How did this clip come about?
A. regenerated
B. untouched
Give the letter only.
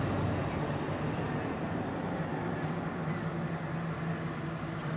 B